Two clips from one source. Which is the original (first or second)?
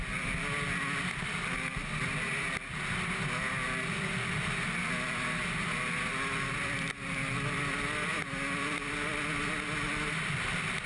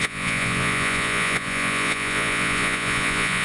first